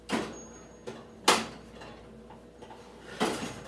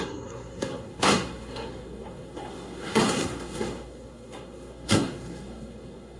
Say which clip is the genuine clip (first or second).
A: first